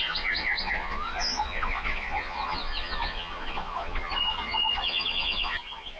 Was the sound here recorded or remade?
remade